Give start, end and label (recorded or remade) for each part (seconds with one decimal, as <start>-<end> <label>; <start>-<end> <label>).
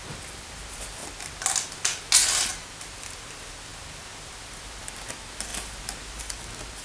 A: 0.0-6.8 recorded